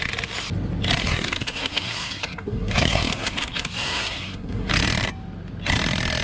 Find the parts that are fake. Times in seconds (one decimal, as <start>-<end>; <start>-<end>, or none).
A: 1.0-4.7